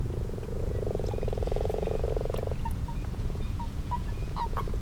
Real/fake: fake